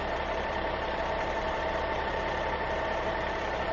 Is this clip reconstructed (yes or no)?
yes